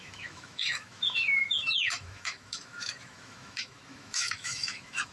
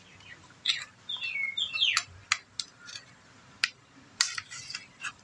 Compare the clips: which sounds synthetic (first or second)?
first